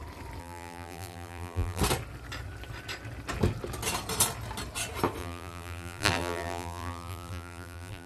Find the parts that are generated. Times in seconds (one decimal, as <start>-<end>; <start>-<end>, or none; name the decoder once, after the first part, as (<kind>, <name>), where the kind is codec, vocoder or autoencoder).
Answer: 0.4-1.8 (vocoder, BigVGAN v2); 5.2-8.1